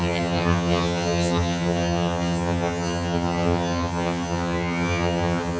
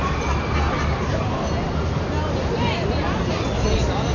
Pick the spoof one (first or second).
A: first